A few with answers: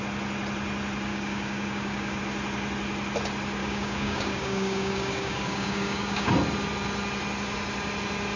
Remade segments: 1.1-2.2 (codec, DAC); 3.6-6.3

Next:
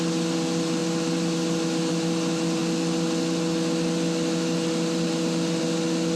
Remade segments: none

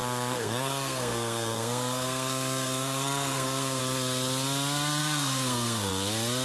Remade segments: 0.0-3.8 (codec, SNAC); 5.0-5.9

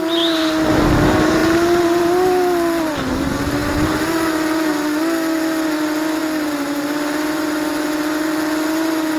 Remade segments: 6.2-9.2 (vocoder, BigVGAN v2)

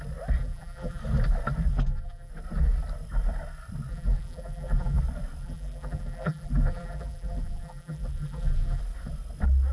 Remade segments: 0.4-1.0 (vocoder, BigVGAN v2); 1.7-2.3; 3.9-5.0; 5.4-8.8

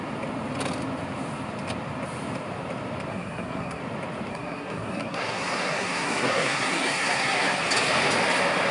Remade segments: 3.1-3.8 (codec, SNAC); 4.3-7.6